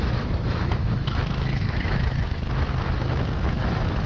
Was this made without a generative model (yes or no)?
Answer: no